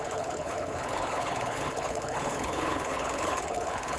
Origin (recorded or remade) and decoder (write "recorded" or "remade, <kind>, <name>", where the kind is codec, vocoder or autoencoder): remade, codec, HILCodec